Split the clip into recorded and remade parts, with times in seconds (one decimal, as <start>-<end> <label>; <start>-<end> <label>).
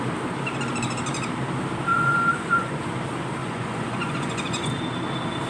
0.0-1.9 recorded; 1.9-2.8 remade; 2.8-3.4 recorded; 3.4-4.7 remade; 4.7-5.5 recorded